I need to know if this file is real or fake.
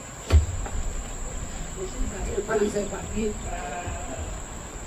fake